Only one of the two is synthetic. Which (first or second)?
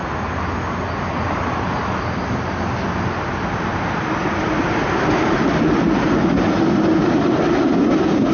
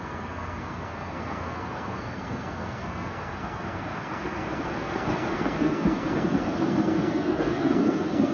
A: second